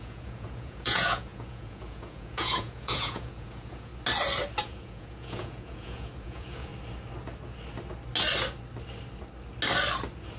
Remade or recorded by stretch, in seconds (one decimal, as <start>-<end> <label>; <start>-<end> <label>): 0.0-3.9 remade; 3.9-4.6 recorded; 4.6-6.7 remade; 6.7-10.4 recorded